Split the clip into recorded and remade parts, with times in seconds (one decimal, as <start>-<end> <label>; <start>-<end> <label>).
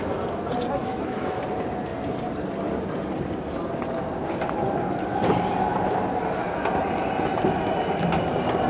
0.0-0.8 recorded; 0.8-1.4 remade; 1.4-8.7 recorded